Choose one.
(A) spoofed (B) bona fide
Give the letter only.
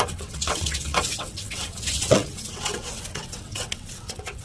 A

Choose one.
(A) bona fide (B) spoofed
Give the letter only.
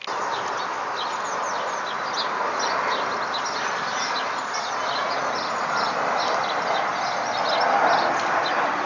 A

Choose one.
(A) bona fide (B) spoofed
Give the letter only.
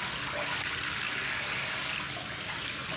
A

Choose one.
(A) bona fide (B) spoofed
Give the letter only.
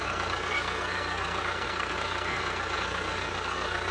B